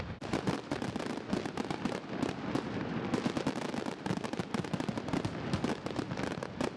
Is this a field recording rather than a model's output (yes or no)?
yes